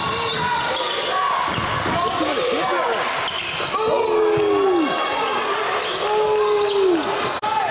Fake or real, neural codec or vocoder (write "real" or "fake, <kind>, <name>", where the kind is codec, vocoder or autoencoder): real